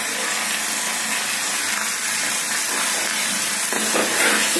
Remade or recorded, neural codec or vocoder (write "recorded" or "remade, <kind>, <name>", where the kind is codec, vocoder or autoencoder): recorded